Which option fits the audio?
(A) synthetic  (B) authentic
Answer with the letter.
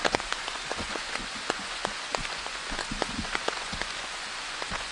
A